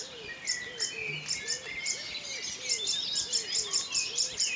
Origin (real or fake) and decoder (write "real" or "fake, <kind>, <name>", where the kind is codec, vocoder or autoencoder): real